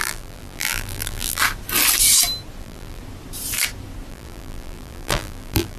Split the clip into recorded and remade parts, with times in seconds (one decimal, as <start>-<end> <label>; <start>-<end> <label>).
0.0-1.4 remade; 1.4-2.6 recorded; 2.6-3.0 remade; 3.0-4.1 recorded; 4.1-5.8 remade